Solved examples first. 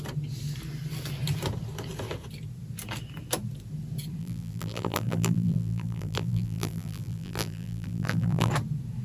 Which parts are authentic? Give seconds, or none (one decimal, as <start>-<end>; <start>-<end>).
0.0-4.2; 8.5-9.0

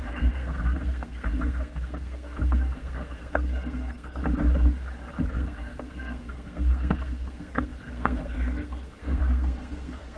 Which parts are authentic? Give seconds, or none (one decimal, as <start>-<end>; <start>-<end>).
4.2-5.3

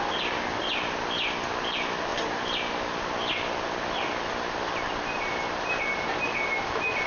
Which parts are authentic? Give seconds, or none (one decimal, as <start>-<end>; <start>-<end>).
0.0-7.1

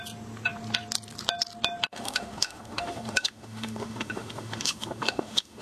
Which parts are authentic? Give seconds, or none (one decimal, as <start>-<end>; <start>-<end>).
0.0-1.9

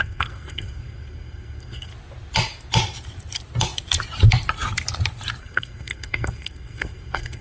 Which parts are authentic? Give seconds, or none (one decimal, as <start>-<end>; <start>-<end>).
1.9-5.4